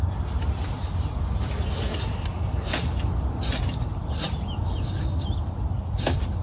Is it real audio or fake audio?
real